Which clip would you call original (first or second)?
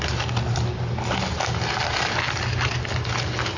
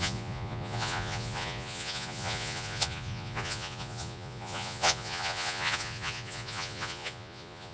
first